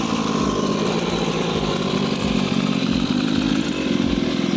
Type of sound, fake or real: real